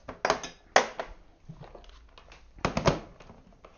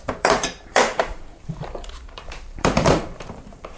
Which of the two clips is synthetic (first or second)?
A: second